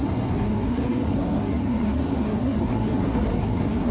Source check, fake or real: fake